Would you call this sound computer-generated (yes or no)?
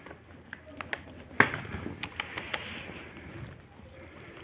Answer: no